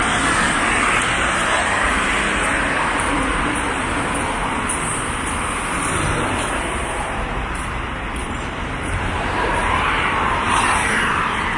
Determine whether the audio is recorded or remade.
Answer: remade